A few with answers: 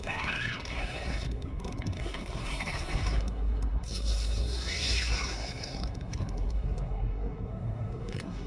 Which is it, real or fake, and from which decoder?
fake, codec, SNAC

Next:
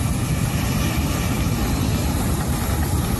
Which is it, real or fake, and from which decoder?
real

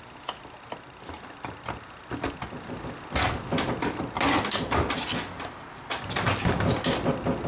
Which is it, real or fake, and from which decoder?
real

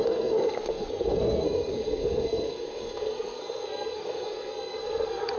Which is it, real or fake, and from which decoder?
fake, codec, SNAC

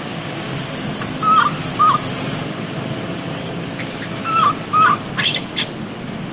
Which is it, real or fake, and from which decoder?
real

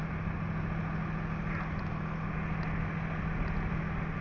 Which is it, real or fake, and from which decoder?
real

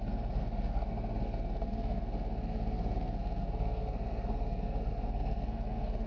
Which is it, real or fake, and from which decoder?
fake, codec, SNAC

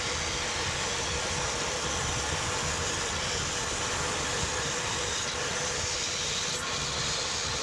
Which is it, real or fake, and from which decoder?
real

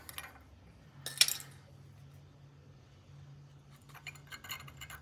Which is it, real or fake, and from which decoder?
real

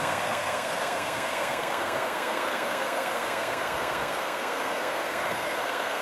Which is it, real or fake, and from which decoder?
fake, codec, SNAC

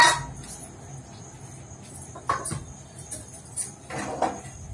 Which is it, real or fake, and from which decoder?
real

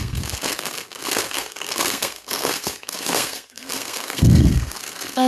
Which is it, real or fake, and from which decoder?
fake, codec, SNAC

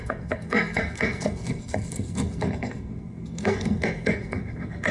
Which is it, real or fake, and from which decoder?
fake, codec, SNAC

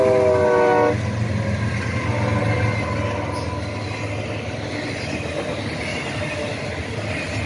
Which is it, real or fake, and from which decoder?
real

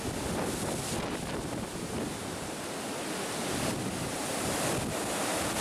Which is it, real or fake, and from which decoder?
real